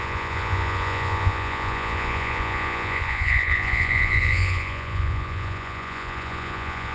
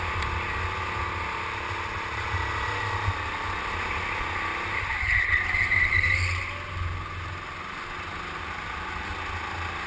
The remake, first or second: first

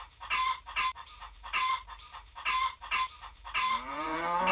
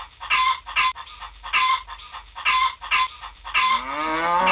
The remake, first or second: first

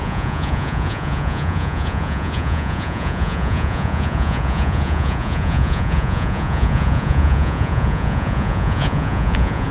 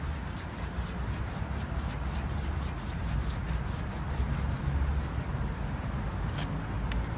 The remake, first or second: first